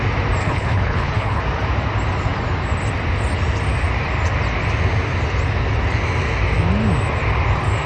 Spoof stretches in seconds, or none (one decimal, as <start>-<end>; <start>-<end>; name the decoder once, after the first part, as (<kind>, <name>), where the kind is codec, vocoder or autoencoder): 0.4-1.4 (codec, HILCodec)